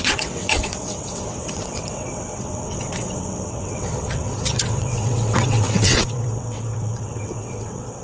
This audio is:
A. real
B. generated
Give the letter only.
B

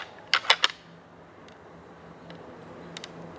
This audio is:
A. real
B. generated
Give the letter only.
A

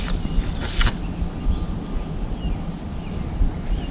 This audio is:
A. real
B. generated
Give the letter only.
A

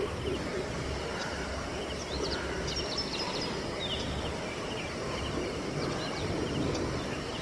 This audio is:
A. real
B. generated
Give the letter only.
A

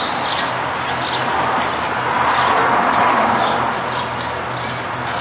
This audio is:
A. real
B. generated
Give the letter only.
A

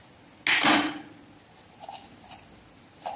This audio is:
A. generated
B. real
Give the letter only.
B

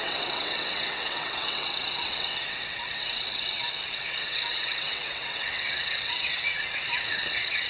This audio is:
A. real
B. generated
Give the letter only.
B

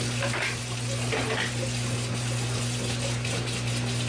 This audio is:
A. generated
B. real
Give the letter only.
B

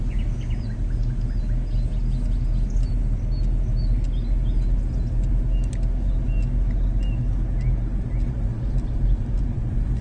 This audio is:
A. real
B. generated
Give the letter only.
A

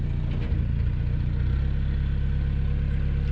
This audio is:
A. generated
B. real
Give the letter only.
B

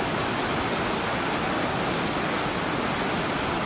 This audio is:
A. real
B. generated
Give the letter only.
A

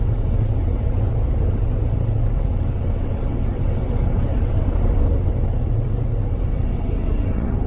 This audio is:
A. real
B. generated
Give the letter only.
B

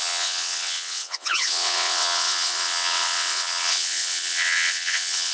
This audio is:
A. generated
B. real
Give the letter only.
A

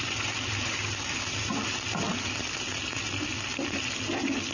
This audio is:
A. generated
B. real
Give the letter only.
B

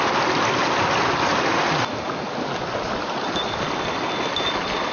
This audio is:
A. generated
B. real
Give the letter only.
B